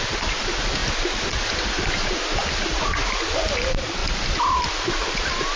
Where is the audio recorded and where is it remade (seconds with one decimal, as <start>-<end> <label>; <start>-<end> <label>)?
0.0-5.6 recorded